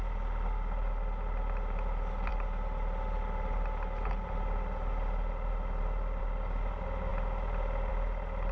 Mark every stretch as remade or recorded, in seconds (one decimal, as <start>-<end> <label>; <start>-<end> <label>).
0.0-8.5 recorded